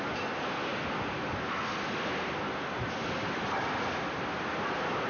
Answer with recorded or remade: recorded